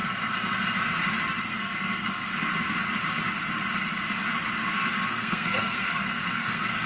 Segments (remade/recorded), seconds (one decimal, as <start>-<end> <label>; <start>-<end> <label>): 0.0-1.4 recorded; 1.4-2.5 remade; 2.5-4.7 recorded; 4.7-6.9 remade